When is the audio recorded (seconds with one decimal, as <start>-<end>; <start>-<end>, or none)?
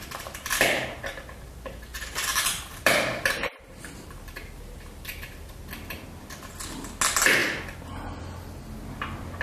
0.0-1.9; 6.5-9.4